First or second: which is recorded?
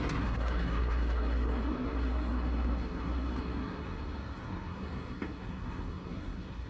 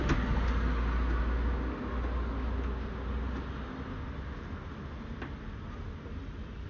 second